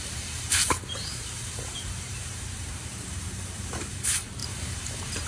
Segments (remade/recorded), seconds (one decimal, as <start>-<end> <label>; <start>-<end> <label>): 0.0-5.3 remade